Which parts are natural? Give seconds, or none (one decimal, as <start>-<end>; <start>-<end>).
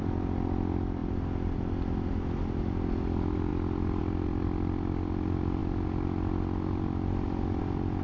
0.0-8.0